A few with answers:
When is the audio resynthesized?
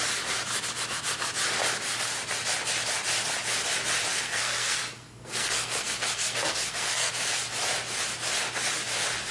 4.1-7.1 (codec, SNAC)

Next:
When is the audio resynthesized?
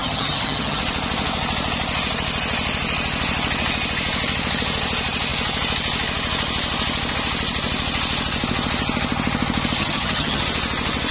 0.0-0.8 (vocoder, HiFi-GAN); 9.8-10.4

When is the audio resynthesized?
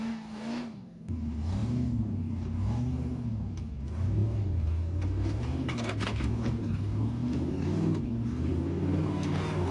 0.0-9.7 (codec, DAC)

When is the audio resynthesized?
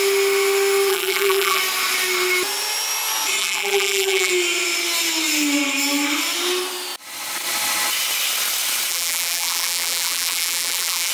0.9-1.6 (vocoder, BigVGAN v2); 3.4-4.3; 8.9-11.1